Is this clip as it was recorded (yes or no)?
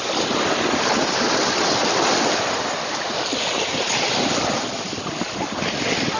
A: yes